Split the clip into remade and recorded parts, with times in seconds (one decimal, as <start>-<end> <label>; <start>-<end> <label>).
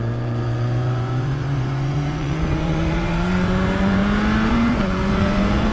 0.0-4.0 remade; 4.0-4.5 recorded; 4.5-5.7 remade